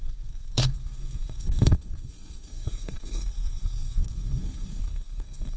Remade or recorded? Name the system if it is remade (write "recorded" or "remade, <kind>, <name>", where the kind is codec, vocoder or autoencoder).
remade, codec, SNAC